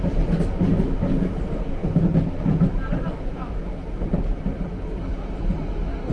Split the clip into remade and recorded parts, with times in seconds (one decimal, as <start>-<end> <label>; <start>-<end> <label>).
0.0-6.1 recorded